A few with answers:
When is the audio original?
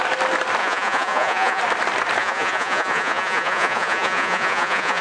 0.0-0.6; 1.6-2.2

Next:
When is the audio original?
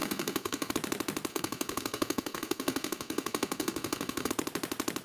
0.7-1.3; 4.3-5.0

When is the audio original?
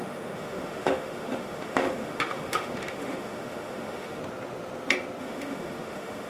4.2-5.2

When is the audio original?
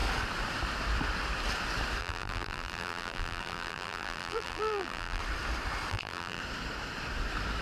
0.0-2.0; 5.2-5.9; 6.4-7.6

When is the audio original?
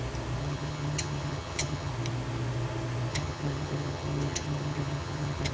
0.0-0.4; 1.9-3.1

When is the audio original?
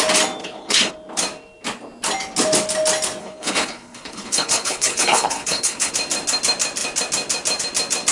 0.0-0.4; 0.9-3.2; 5.9-8.1